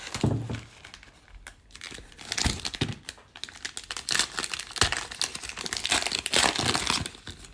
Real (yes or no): yes